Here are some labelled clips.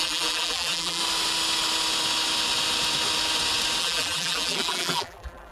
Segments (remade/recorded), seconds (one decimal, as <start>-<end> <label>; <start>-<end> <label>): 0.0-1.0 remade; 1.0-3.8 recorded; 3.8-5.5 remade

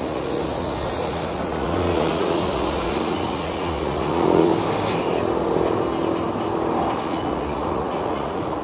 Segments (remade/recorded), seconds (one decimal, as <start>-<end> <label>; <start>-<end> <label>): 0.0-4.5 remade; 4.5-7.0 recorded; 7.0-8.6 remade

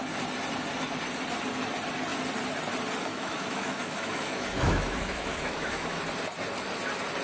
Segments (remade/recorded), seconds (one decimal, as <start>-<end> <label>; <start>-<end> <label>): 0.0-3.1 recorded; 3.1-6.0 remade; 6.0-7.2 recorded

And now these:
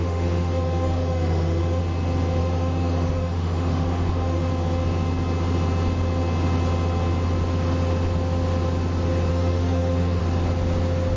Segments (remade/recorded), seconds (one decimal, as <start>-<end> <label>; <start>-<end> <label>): 0.0-1.8 remade; 1.8-2.4 recorded; 2.4-4.5 remade; 4.5-9.3 recorded; 9.3-10.2 remade; 10.2-11.2 recorded